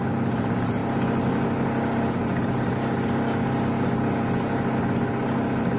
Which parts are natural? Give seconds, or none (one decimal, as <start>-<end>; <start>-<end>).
0.0-5.8

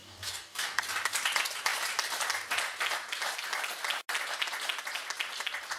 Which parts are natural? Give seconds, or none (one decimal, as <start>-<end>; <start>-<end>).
0.8-5.8

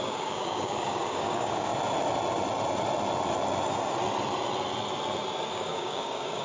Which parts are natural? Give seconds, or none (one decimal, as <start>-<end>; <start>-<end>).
1.7-5.5

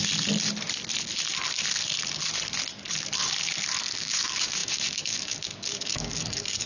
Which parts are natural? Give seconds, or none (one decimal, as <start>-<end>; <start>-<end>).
0.0-4.0